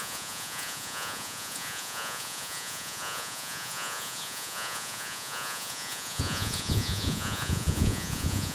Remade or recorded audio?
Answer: remade